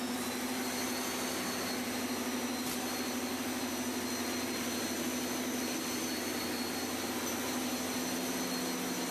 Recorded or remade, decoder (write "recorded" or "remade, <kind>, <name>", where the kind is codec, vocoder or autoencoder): recorded